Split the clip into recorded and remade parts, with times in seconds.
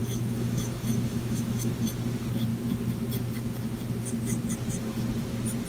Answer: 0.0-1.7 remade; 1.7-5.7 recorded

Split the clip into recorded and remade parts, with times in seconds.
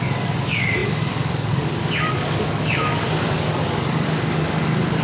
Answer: 0.0-5.0 remade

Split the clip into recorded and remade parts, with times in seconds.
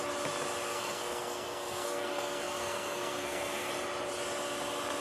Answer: 0.0-0.7 recorded; 0.7-3.7 remade; 3.7-5.0 recorded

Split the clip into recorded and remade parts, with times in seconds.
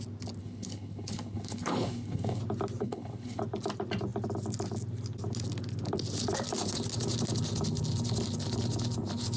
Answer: 0.0-0.4 recorded; 0.4-2.4 remade; 2.4-2.8 recorded; 2.8-3.4 remade; 3.4-9.4 recorded